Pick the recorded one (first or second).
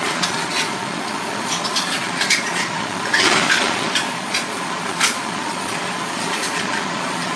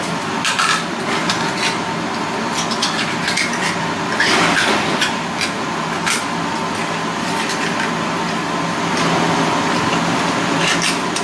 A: second